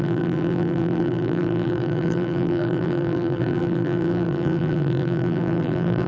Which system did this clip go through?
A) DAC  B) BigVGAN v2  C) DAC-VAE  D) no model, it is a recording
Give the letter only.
B